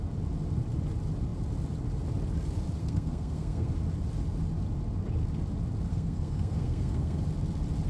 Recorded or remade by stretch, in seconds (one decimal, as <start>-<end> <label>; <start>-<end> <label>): 0.0-2.8 recorded; 2.8-3.7 remade; 3.7-5.9 recorded; 5.9-7.2 remade; 7.2-7.9 recorded